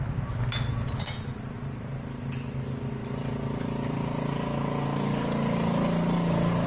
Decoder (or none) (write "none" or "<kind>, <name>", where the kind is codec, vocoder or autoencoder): none